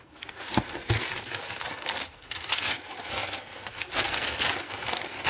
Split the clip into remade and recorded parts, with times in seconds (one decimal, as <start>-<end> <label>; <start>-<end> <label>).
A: 0.0-5.3 remade